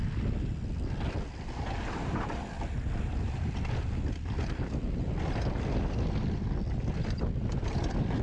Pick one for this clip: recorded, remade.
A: recorded